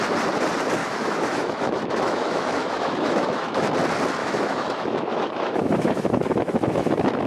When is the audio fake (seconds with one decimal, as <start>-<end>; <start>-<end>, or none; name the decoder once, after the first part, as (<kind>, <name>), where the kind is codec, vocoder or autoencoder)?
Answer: 0.8-3.7 (autoencoder, DAC-VAE); 4.2-7.3